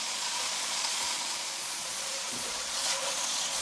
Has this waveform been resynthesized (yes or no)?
yes